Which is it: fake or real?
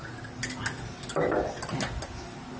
real